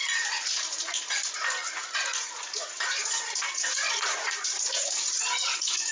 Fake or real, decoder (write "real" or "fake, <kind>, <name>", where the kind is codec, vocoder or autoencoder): fake, vocoder, Vocos